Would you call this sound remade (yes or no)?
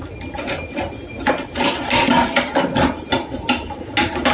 no